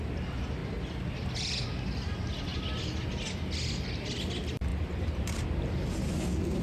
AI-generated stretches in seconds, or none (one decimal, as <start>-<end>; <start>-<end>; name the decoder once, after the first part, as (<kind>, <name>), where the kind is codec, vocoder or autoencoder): 4.7-5.2 (vocoder, BigVGAN v2)